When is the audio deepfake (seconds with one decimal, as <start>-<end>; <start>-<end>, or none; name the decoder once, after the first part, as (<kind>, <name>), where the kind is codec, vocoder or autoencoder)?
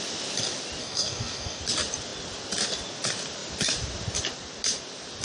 0.8-1.6 (codec, DAC)